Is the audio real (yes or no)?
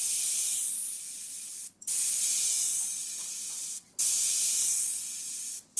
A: yes